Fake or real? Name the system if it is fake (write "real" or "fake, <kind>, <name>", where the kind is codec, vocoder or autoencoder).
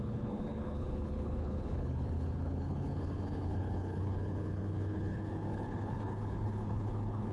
fake, codec, HILCodec